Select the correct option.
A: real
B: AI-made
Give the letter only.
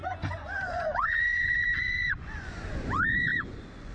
B